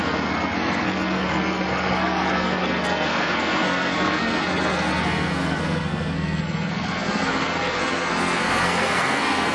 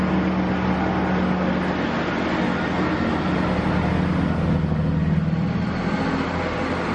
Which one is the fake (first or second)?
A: first